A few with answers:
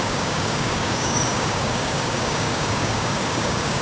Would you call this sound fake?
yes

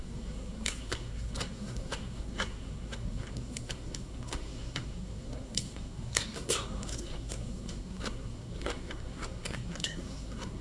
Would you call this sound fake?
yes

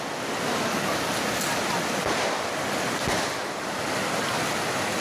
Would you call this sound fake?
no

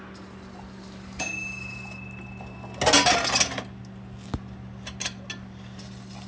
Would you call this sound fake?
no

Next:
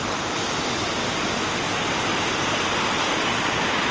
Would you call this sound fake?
no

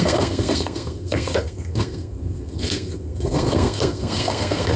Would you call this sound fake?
yes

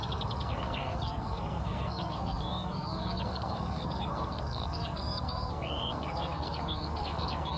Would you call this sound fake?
yes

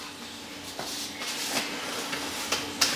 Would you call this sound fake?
no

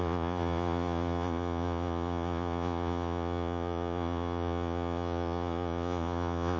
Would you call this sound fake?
yes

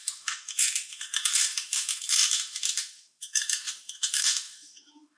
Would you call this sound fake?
yes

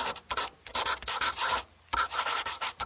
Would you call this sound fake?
yes